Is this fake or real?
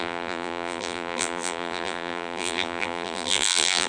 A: fake